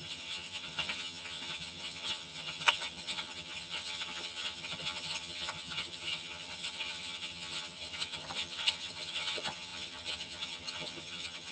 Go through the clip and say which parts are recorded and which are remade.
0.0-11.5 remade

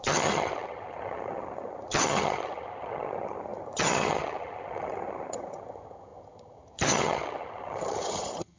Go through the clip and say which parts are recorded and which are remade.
0.0-8.6 remade

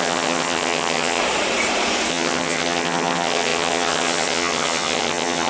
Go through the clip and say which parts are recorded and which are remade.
0.0-1.2 remade; 1.2-2.1 recorded; 2.1-5.5 remade

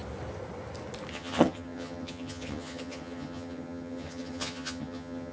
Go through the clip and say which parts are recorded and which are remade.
0.0-1.1 recorded; 1.1-5.3 remade

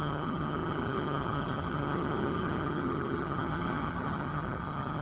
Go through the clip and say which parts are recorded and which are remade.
0.0-5.0 remade

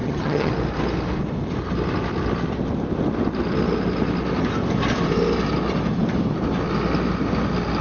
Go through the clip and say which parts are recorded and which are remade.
0.0-0.5 remade; 0.5-7.8 recorded

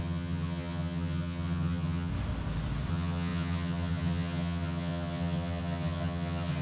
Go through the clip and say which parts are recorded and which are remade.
0.0-2.1 remade; 2.1-2.9 recorded; 2.9-6.6 remade